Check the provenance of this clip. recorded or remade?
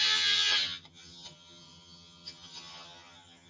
remade